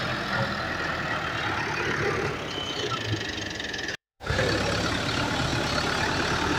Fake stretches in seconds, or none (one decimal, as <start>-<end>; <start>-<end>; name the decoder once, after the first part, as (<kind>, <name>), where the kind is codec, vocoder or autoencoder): 3.9-4.4 (autoencoder, DAC-VAE)